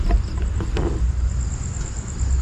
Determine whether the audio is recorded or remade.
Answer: recorded